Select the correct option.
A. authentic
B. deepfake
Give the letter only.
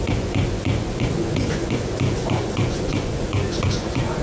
B